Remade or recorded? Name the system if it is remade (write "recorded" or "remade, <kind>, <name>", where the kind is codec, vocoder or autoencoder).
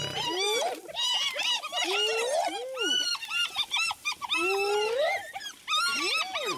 recorded